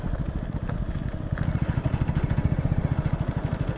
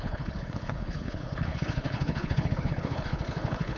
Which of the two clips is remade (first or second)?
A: second